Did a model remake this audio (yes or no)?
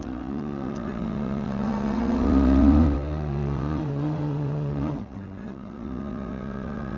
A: yes